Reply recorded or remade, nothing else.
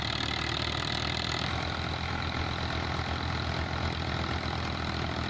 recorded